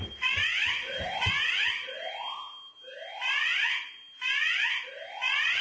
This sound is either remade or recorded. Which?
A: recorded